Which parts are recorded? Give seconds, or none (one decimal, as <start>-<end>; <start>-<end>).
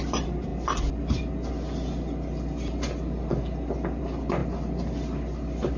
0.0-5.8